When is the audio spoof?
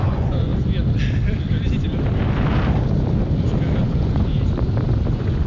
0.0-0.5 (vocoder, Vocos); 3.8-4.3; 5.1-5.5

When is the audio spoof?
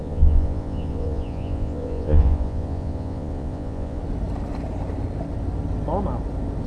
0.0-4.0 (vocoder, Vocos)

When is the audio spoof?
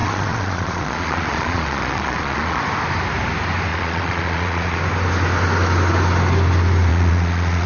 0.0-2.6 (vocoder, Vocos); 3.7-4.8; 6.9-7.7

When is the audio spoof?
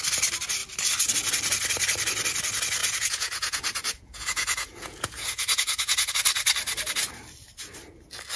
2.8-6.1 (vocoder, Vocos)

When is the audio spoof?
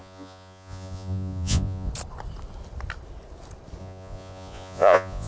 0.0-1.9 (vocoder, Vocos); 3.8-5.3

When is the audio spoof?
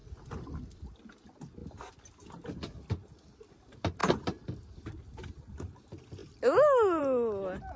none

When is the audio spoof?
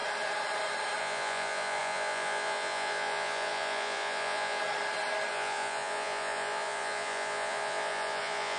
1.0-4.6 (vocoder, Vocos); 5.3-8.6